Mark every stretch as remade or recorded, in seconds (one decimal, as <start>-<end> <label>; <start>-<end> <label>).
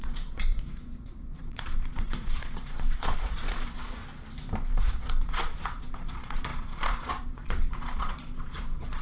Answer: 0.0-4.0 remade; 4.0-4.8 recorded; 4.8-9.0 remade